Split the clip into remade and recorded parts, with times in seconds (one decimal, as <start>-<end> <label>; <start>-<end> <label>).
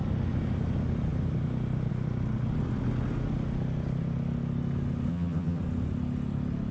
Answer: 0.0-5.1 recorded; 5.1-5.6 remade; 5.6-6.7 recorded